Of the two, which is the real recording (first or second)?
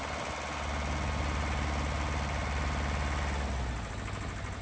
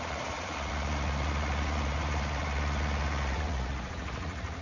first